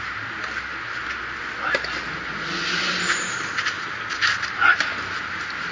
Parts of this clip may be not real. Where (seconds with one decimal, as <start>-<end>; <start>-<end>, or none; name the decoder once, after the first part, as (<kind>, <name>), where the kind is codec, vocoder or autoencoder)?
none